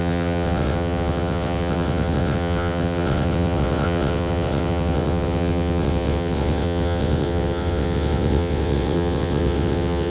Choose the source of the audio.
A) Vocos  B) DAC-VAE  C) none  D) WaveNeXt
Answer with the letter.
D